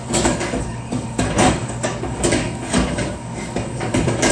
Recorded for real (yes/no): no